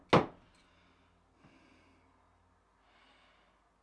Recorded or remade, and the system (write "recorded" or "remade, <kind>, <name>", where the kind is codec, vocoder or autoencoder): recorded